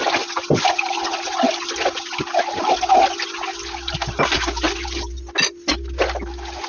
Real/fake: real